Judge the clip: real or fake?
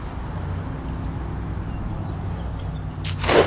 real